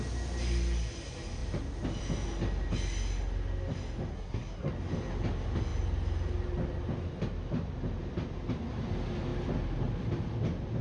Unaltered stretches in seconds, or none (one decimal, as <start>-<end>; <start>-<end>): 0.0-4.1; 4.7-10.8

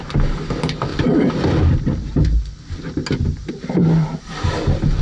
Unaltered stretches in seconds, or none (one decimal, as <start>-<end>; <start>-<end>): 0.0-5.0

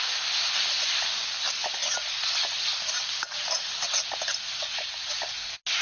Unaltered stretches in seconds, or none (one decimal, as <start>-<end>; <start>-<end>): 0.0-5.8

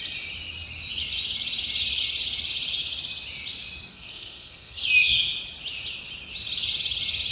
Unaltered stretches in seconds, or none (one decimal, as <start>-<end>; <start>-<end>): 0.0-3.9; 4.8-7.3

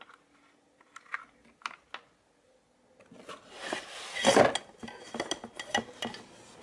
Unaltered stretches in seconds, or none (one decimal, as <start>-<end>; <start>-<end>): 0.0-6.6

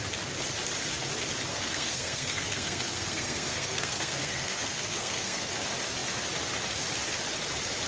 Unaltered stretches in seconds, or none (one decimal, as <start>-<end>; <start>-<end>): 0.0-1.5; 5.5-7.9